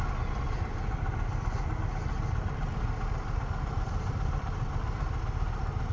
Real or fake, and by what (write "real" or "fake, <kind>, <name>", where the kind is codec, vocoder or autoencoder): real